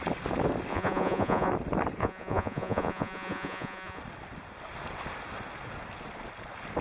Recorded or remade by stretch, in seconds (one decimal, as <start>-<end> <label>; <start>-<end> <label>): 0.0-0.7 recorded; 0.7-1.5 remade; 1.5-2.0 recorded; 2.0-4.0 remade; 4.0-6.8 recorded